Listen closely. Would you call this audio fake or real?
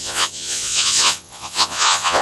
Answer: fake